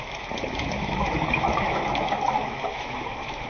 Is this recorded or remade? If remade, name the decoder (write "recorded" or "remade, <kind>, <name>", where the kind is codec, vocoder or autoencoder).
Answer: remade, autoencoder, DAC-VAE